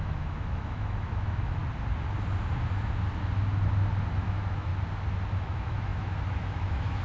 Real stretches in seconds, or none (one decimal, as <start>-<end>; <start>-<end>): 1.6-4.1; 4.7-5.3